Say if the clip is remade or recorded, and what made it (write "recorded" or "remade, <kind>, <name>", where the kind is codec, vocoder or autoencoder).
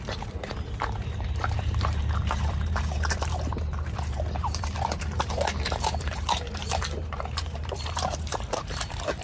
remade, vocoder, BigVGAN v2